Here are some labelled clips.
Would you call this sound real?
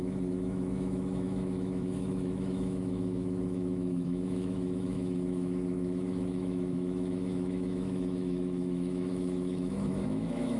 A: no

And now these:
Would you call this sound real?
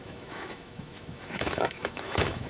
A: no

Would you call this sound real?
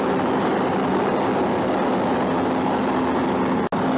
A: yes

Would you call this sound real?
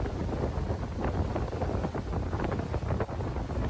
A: yes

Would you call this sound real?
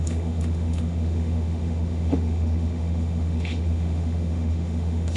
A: no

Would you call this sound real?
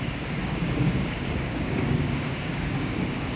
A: no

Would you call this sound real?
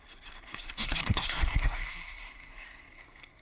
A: no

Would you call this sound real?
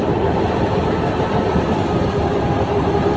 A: yes